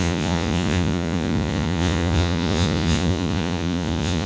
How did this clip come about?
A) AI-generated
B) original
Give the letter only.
A